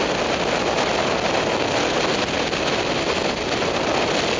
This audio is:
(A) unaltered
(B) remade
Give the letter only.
A